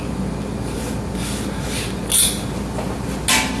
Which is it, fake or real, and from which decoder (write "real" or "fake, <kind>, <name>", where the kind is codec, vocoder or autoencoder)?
real